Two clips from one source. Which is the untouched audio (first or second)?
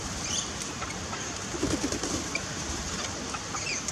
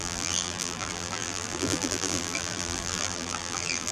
first